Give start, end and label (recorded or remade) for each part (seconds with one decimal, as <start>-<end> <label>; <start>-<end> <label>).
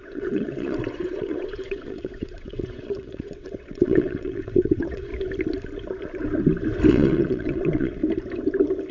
0.0-5.1 remade; 5.1-6.9 recorded; 6.9-8.0 remade; 8.0-8.9 recorded